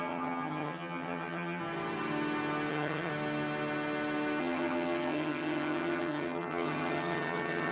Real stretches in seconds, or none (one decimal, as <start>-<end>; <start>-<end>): 1.6-2.7; 3.1-4.4